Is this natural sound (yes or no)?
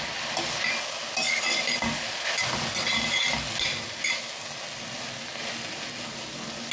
yes